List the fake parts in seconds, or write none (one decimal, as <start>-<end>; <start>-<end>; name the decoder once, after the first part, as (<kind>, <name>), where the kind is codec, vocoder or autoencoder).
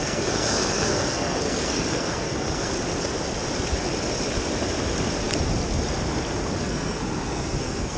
0.0-2.7 (codec, SNAC); 6.6-8.0